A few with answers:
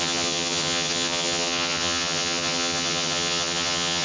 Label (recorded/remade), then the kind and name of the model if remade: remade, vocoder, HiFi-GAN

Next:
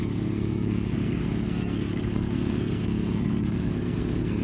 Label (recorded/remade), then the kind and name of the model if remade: remade, codec, SNAC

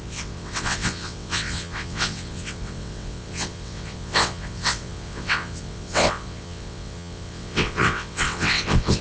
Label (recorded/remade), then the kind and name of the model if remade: remade, vocoder, WaveNeXt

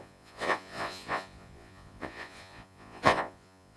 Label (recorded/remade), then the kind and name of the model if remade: remade, vocoder, Vocos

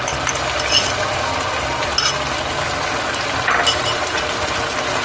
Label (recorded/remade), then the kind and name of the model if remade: recorded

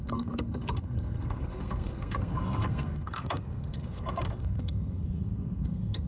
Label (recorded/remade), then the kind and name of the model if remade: remade, codec, SNAC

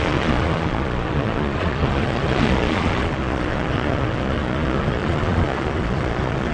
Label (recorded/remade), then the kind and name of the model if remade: remade, vocoder, Vocos